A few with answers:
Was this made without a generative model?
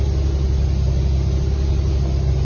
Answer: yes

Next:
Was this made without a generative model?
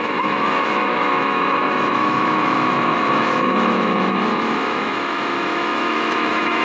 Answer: no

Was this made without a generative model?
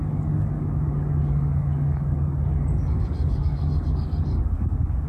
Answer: no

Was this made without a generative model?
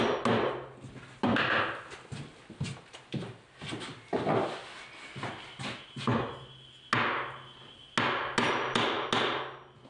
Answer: yes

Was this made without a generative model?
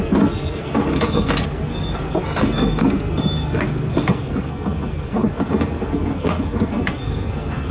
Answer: no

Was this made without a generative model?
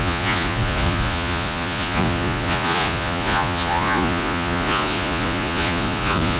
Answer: no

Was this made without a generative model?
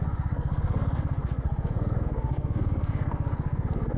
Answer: no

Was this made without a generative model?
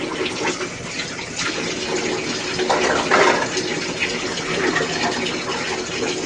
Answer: yes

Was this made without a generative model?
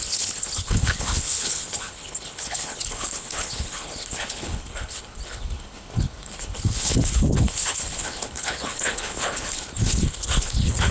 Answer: no